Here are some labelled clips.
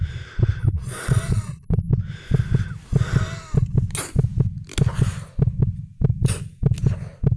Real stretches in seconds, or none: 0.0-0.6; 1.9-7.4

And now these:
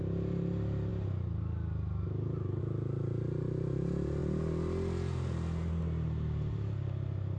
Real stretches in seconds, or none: 0.0-7.4